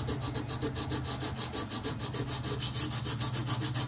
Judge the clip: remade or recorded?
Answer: recorded